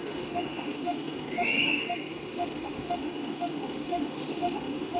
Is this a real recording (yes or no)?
no